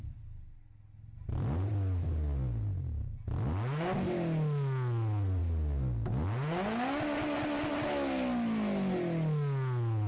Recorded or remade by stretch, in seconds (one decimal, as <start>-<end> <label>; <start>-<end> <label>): 0.0-10.1 recorded